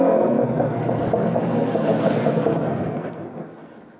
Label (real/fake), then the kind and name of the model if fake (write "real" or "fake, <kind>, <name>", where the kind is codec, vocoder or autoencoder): fake, codec, SNAC